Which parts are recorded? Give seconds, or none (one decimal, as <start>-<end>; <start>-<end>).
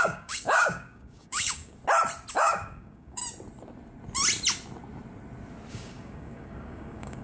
1.8-2.3; 3.2-5.7